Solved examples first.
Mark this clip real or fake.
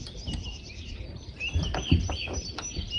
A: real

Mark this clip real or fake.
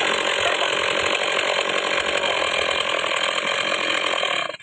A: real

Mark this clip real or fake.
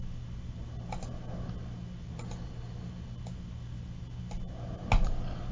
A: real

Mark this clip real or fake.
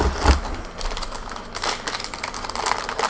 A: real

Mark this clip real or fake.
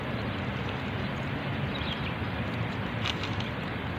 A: real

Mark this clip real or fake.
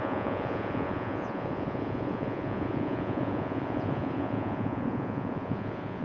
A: fake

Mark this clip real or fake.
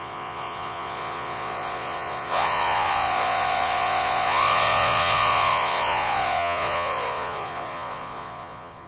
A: fake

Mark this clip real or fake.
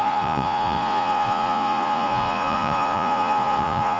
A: fake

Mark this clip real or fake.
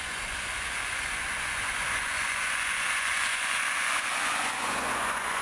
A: fake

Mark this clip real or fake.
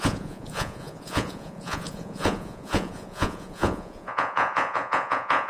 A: fake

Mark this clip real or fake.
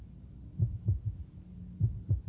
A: real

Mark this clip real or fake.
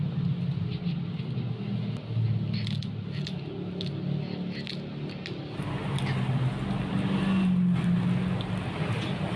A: real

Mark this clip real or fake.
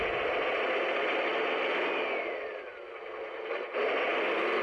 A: real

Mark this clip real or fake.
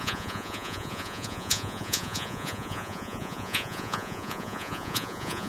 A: fake